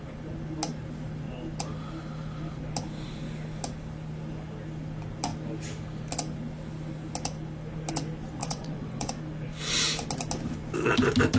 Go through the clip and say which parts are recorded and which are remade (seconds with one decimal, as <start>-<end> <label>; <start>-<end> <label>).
0.0-8.4 recorded; 8.4-9.1 remade; 9.1-11.4 recorded